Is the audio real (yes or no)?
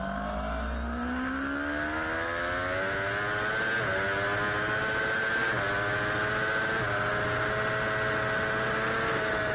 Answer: yes